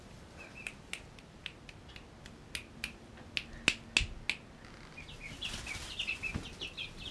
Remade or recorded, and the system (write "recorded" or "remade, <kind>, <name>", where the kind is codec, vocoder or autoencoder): recorded